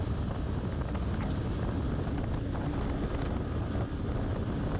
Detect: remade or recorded recorded